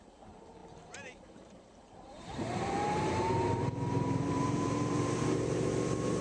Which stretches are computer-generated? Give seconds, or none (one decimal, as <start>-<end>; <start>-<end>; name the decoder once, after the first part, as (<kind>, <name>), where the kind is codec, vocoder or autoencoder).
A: 0.0-6.2 (vocoder, BigVGAN v2)